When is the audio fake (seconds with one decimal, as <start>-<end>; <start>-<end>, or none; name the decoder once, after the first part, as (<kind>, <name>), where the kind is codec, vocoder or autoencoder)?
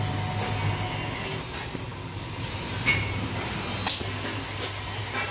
1.9-2.5 (codec, DAC)